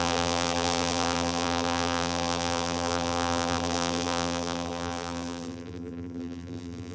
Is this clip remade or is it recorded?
remade